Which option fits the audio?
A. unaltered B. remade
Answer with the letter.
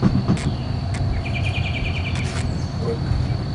A